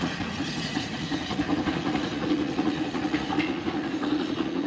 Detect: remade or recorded remade